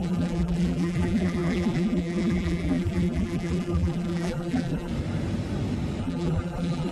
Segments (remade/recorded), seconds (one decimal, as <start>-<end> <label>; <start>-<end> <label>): 0.0-4.9 remade; 4.9-6.0 recorded; 6.0-6.9 remade